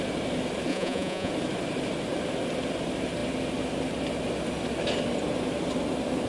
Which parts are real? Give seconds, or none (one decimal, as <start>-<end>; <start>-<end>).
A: 0.0-0.7; 1.3-6.3